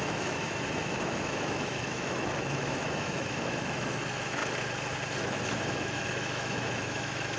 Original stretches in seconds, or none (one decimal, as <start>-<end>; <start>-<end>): 4.4-5.2